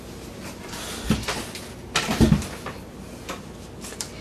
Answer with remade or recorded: recorded